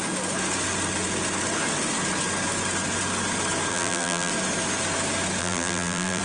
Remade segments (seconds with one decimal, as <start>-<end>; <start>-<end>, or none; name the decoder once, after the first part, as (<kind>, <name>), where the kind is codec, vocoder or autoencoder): 3.7-4.3 (vocoder, BigVGAN v2); 5.4-6.2